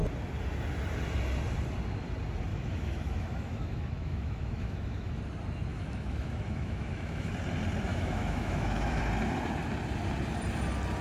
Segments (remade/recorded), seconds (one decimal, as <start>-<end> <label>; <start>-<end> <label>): 0.0-2.5 recorded; 2.5-5.2 remade; 5.2-5.7 recorded; 5.7-7.3 remade; 7.3-7.9 recorded; 7.9-9.0 remade; 9.0-11.0 recorded